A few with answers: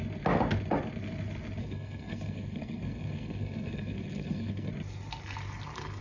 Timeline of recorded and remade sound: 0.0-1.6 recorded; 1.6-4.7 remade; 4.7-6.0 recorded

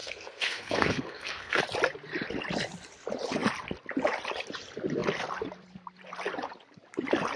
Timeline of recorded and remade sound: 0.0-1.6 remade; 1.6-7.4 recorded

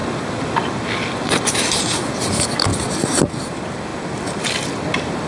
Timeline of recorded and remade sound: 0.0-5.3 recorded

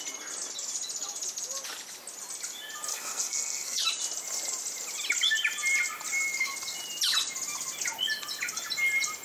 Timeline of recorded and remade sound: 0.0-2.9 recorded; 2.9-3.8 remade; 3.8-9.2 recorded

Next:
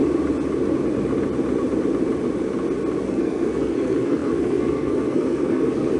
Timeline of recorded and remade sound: 0.0-3.1 recorded; 3.1-6.0 remade

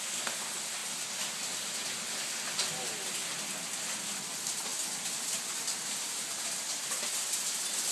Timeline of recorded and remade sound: 0.0-7.9 recorded